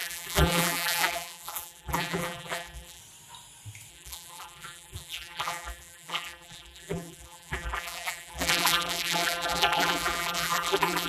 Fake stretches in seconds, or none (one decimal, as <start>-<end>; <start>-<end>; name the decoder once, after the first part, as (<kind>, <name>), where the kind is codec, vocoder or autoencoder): 0.0-3.0 (vocoder, BigVGAN v2); 3.9-11.1